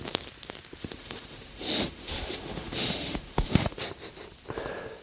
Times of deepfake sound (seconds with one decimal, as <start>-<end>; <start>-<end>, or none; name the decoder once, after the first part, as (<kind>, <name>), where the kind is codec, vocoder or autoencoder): 0.8-3.8 (autoencoder, DAC-VAE)